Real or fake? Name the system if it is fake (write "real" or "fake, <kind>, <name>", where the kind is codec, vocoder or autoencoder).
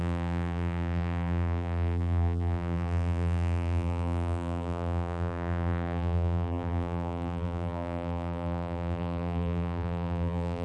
fake, vocoder, BigVGAN v2